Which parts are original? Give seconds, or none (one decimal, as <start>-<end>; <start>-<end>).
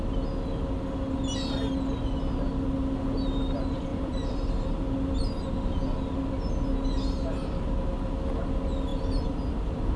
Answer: 0.0-3.9; 4.8-8.9; 9.6-10.0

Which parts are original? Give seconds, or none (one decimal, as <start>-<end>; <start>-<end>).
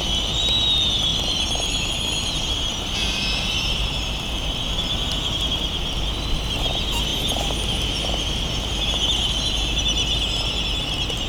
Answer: 0.0-1.1; 6.0-11.3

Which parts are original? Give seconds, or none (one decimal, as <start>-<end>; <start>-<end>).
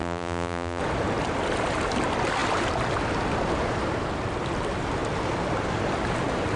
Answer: 0.8-6.6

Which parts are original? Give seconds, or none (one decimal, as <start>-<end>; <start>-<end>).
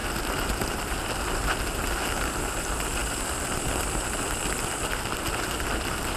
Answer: 0.0-6.2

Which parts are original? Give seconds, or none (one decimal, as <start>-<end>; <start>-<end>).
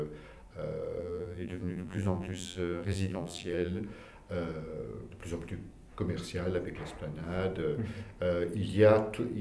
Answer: 0.0-1.0; 3.8-9.4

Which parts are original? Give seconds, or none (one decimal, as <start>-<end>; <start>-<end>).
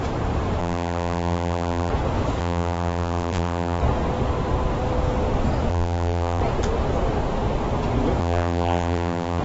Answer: 0.0-0.6; 1.9-2.4; 3.8-5.7; 6.4-8.2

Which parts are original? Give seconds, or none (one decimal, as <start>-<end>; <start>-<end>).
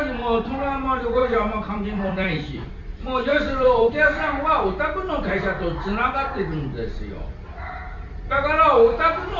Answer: 0.0-1.2; 2.7-3.3; 3.9-9.4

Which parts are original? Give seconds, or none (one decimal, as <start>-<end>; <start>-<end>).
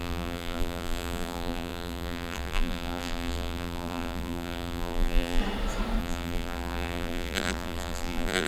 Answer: 5.4-6.0